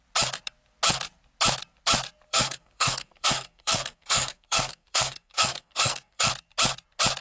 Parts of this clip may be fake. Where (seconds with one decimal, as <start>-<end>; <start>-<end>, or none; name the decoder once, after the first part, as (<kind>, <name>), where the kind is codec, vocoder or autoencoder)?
2.3-6.3 (codec, SNAC)